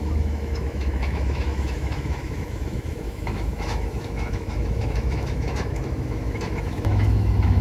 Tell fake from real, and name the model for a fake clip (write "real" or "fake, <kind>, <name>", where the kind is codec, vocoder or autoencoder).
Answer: fake, autoencoder, DAC-VAE